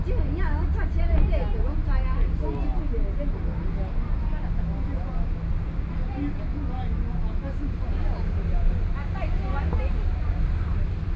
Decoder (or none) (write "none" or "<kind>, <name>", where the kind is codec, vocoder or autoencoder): none